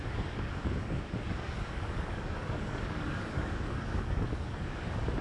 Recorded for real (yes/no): no